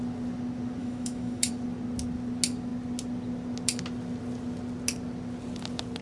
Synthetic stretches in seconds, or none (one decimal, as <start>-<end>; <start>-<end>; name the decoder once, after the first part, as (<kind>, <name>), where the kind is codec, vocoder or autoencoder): 0.8-1.5 (autoencoder, DAC-VAE)